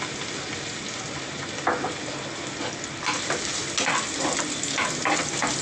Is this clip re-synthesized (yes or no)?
no